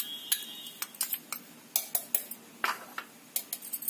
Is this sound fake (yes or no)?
no